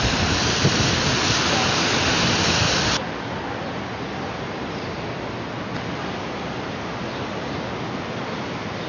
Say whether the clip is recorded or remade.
recorded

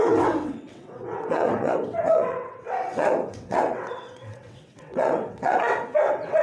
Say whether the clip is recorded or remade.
remade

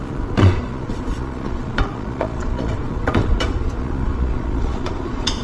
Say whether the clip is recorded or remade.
remade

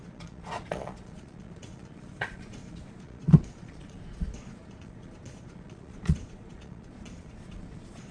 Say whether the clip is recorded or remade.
remade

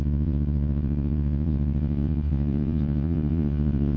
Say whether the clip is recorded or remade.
remade